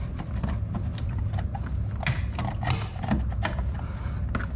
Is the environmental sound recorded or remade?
recorded